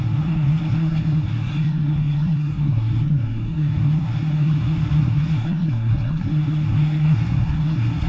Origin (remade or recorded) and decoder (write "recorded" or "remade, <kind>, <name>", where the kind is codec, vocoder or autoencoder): remade, codec, SNAC